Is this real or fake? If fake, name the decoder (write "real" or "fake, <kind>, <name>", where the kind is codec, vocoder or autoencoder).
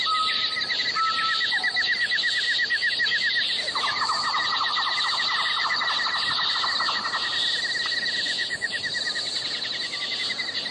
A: real